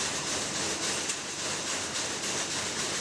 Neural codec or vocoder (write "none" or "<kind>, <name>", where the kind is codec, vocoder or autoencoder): none